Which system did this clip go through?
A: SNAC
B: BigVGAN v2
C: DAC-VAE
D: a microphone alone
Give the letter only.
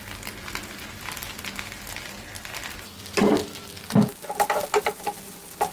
D